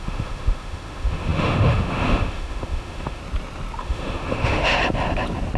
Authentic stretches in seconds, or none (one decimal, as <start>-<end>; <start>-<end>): 3.2-3.8; 4.8-5.6